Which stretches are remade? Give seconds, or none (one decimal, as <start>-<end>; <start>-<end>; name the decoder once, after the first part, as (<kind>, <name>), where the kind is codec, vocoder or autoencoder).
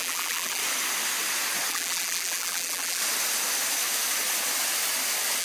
0.0-0.6 (vocoder, BigVGAN v2); 1.7-3.0